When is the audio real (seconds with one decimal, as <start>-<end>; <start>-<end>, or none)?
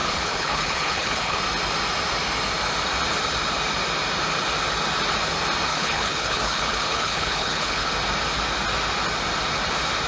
1.4-5.7; 7.9-10.1